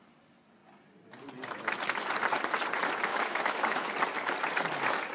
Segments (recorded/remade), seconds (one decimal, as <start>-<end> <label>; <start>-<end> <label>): 0.0-3.1 recorded; 3.1-3.9 remade; 3.9-5.1 recorded

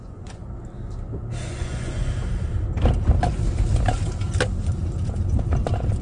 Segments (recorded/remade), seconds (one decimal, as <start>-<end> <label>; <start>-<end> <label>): 0.0-0.4 remade; 0.4-1.4 recorded; 1.4-2.1 remade; 2.1-6.0 recorded

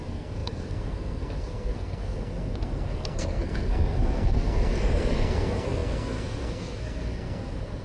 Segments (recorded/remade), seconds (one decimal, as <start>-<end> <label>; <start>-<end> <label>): 0.0-7.8 remade

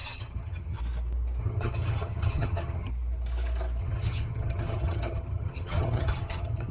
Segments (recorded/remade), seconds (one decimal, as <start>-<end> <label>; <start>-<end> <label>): 0.0-0.8 remade; 0.8-1.4 recorded; 1.4-2.9 remade; 2.9-3.8 recorded; 3.8-6.7 remade

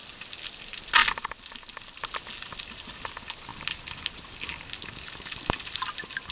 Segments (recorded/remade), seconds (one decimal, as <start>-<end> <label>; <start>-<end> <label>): 0.0-6.3 recorded

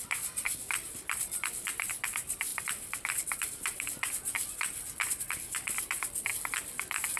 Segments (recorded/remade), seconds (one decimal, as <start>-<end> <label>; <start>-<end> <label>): 0.0-6.3 remade; 6.3-7.2 recorded